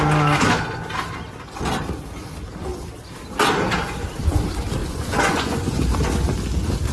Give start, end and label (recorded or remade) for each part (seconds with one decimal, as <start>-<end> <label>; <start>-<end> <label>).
0.0-4.8 recorded; 4.8-5.8 remade; 5.8-6.9 recorded